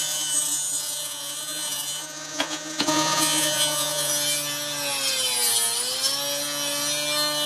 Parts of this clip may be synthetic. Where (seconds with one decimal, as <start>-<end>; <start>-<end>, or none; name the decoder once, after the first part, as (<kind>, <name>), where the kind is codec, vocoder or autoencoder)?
0.0-4.1 (vocoder, Vocos)